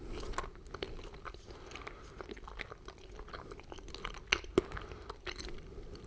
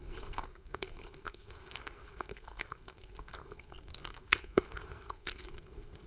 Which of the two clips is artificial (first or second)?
second